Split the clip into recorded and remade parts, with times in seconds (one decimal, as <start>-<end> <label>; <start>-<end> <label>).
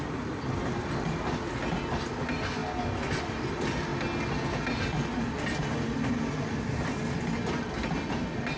0.0-8.6 recorded